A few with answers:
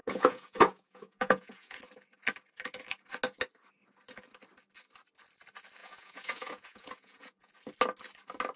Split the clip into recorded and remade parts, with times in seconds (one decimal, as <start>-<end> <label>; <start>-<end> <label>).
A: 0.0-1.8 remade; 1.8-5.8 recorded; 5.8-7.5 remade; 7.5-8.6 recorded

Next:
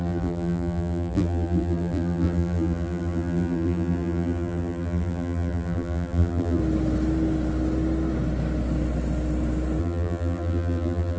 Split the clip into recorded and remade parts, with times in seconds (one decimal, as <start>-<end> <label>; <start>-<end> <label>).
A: 0.0-6.6 remade; 6.6-9.8 recorded; 9.8-11.2 remade

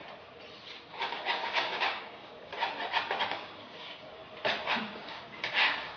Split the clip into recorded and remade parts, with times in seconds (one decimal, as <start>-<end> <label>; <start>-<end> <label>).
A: 0.0-0.9 recorded; 0.9-2.5 remade; 2.5-3.3 recorded; 3.3-4.2 remade; 4.2-4.8 recorded; 4.8-6.0 remade

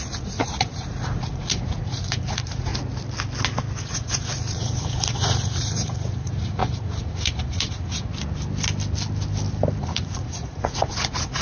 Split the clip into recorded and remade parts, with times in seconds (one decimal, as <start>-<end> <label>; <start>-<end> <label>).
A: 0.0-2.7 remade; 2.7-3.8 recorded; 3.8-8.1 remade; 8.1-9.8 recorded; 9.8-11.4 remade

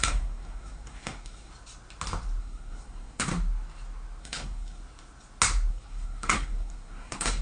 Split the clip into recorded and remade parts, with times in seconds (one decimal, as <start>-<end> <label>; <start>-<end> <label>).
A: 0.0-1.5 remade; 1.5-2.4 recorded; 2.4-3.3 remade; 3.3-4.2 recorded; 4.2-4.8 remade; 4.8-5.7 recorded; 5.7-7.4 remade

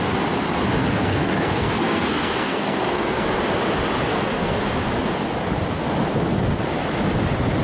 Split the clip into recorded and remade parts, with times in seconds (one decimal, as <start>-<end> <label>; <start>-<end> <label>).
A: 0.0-0.8 recorded; 0.8-3.4 remade; 3.4-4.1 recorded; 4.1-4.6 remade; 4.6-7.6 recorded

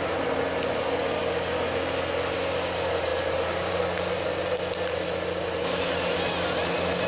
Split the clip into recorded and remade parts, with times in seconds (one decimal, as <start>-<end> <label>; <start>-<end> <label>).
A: 0.0-7.1 recorded

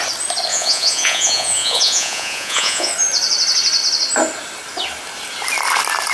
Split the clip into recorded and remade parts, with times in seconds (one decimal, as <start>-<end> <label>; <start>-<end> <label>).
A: 0.0-0.5 recorded; 0.5-2.9 remade; 2.9-6.1 recorded